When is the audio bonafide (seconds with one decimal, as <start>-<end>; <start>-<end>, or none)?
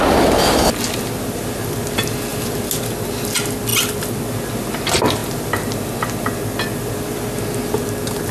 0.0-2.3; 3.1-8.3